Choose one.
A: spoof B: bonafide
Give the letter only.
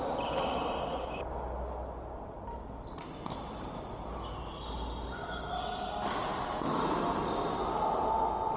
B